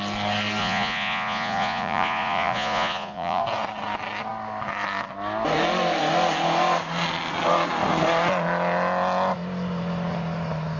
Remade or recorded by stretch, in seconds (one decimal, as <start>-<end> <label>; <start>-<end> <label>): 0.0-0.6 recorded; 0.6-3.4 remade; 3.4-10.8 recorded